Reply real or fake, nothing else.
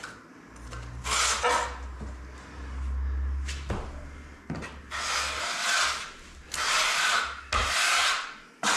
real